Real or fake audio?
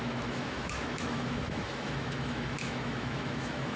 fake